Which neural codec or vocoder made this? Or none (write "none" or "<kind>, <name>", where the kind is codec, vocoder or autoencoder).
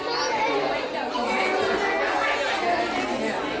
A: none